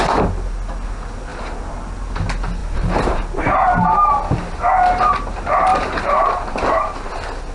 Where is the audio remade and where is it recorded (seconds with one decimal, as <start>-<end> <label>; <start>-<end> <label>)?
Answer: 0.0-2.6 recorded; 2.6-4.1 remade; 4.1-5.7 recorded; 5.7-7.1 remade; 7.1-7.5 recorded